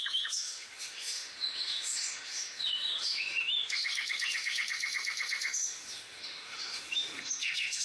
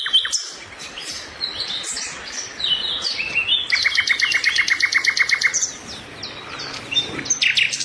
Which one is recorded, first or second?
second